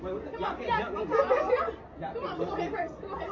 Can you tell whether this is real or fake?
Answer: real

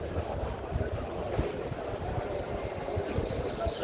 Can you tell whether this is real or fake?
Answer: real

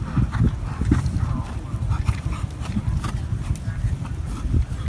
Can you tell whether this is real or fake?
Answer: real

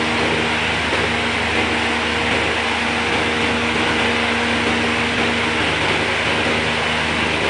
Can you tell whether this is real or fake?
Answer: real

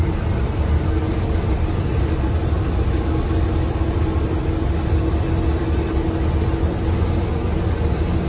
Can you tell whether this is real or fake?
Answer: real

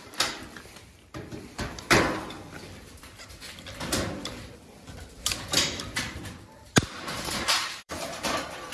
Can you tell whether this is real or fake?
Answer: fake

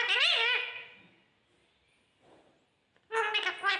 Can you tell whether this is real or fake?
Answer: real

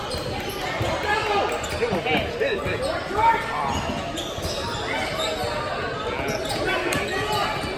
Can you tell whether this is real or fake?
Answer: real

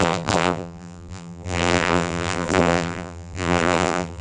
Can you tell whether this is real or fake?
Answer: fake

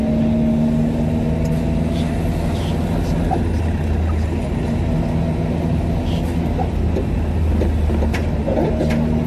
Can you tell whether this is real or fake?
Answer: real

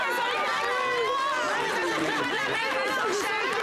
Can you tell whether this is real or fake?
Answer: real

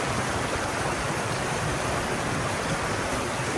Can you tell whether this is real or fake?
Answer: real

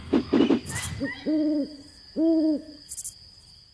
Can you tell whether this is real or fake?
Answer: real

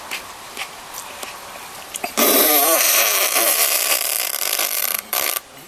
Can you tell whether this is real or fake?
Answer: fake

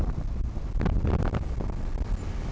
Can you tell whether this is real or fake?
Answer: real